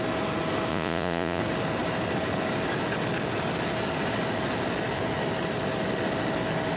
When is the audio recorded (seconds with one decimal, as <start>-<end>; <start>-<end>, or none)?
0.0-0.7; 1.4-6.8

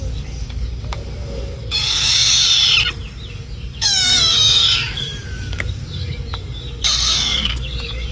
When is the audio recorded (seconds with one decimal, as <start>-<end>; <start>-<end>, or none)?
2.4-3.3

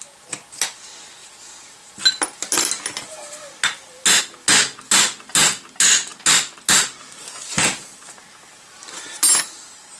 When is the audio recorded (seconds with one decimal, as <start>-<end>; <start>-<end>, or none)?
0.0-10.0

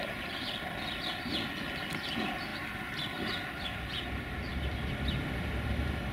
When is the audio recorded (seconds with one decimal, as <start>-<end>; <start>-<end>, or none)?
0.0-6.1

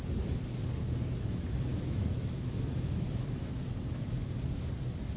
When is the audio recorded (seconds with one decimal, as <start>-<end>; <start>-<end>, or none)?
0.0-1.7; 3.6-5.2

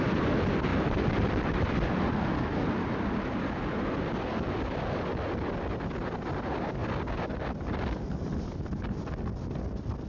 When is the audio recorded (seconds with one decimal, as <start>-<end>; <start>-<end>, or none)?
0.0-0.7; 3.1-10.1

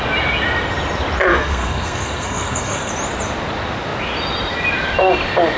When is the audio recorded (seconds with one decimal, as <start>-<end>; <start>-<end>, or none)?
0.0-1.3; 2.9-5.6

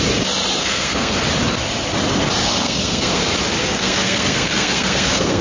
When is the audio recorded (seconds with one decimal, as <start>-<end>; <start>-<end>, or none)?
0.0-0.6; 1.2-2.4; 3.2-3.6